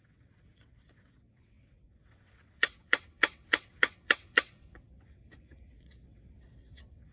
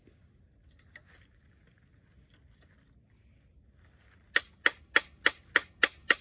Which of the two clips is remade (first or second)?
first